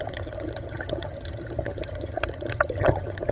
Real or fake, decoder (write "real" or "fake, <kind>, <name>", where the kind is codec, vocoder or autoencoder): fake, vocoder, HiFi-GAN